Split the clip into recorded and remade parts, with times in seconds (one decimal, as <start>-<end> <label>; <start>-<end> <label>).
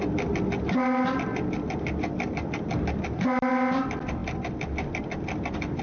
0.0-5.8 recorded